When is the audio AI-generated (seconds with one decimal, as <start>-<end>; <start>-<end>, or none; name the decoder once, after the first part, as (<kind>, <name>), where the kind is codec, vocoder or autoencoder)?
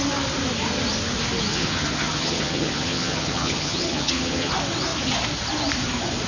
1.5-4.5 (vocoder, HiFi-GAN)